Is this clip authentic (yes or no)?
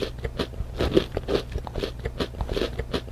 yes